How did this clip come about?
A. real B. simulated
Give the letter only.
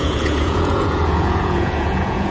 B